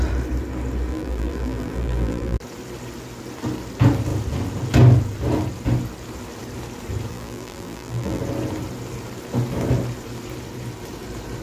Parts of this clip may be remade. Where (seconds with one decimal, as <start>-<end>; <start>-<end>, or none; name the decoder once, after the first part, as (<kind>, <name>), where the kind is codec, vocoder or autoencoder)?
0.9-2.4 (vocoder, BigVGAN v2); 7.1-8.2